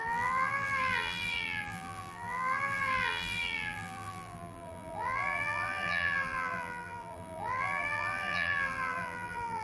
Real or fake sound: fake